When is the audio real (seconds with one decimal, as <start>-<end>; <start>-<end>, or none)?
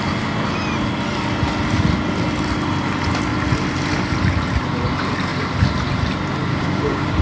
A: 0.0-6.5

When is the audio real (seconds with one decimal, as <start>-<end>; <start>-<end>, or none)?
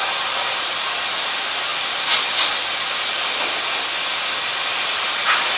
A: 0.0-5.6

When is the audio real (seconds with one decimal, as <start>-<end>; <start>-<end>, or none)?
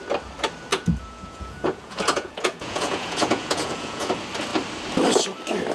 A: 0.0-0.7; 4.1-5.7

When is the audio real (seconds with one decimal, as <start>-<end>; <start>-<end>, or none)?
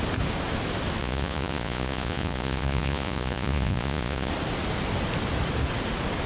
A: 0.0-1.0; 4.3-6.3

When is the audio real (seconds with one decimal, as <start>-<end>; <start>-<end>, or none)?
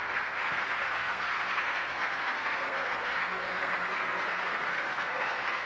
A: none